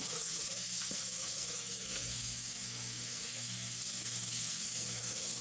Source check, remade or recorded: remade